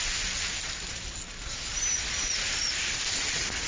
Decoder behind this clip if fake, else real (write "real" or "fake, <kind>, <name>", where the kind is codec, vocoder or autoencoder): real